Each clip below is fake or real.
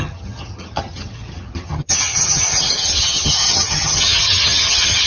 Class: fake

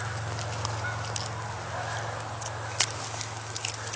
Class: real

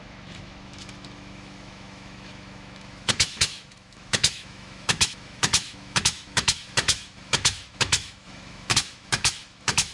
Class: fake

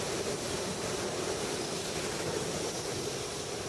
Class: fake